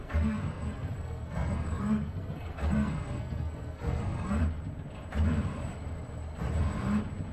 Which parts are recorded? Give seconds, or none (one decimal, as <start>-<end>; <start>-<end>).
4.4-7.3